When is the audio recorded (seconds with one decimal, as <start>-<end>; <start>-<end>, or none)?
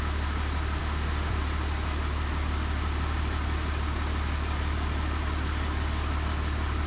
0.0-0.8; 1.3-6.9